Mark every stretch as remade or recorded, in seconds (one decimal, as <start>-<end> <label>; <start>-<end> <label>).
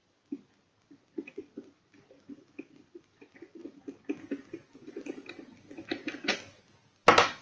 0.0-7.4 recorded